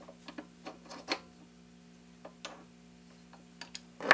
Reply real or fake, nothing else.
real